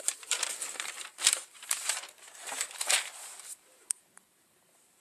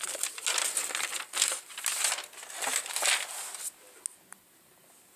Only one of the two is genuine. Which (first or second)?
second